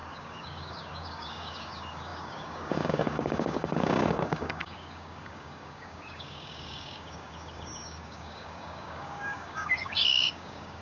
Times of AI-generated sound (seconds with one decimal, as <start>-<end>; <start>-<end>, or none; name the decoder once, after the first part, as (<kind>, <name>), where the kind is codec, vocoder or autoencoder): 0.0-10.8 (codec, DAC)